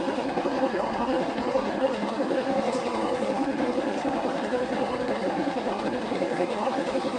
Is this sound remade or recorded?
remade